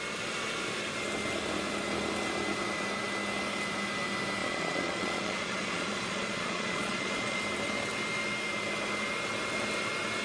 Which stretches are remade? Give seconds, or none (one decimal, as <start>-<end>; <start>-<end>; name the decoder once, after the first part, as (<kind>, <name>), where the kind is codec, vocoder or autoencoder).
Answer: 4.4-7.4 (vocoder, Vocos)